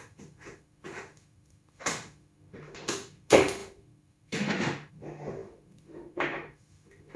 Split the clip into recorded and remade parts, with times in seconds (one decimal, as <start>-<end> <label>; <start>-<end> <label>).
0.0-7.2 remade